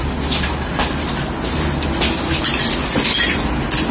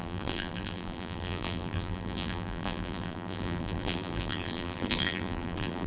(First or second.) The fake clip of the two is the second